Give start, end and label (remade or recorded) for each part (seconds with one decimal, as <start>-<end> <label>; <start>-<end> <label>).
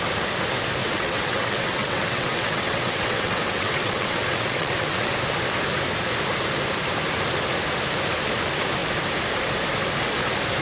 0.0-0.8 recorded; 0.8-5.1 remade; 5.1-10.6 recorded